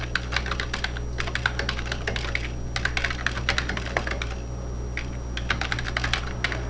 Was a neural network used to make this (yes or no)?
no